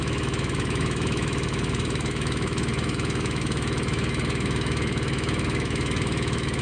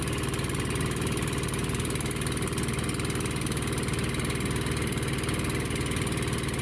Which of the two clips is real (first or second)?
second